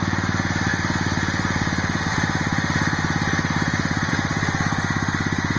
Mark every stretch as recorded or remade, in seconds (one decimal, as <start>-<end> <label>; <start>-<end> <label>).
0.0-5.6 recorded